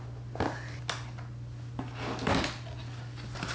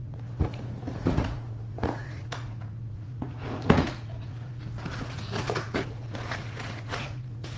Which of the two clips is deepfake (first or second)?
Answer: second